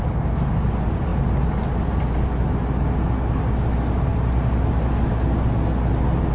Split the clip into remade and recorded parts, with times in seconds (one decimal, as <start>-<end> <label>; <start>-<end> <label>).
0.0-6.3 recorded